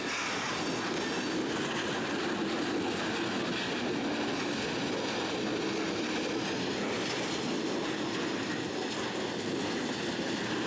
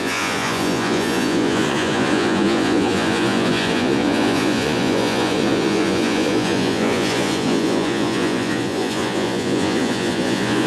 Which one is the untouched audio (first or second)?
first